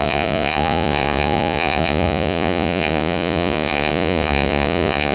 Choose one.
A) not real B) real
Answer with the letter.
A